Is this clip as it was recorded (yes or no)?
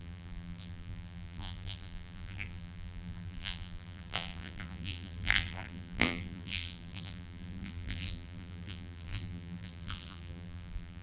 no